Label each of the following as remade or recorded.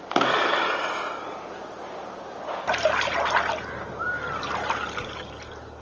recorded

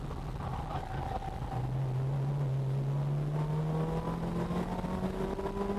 recorded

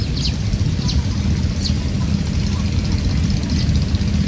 recorded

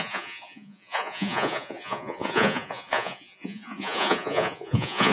remade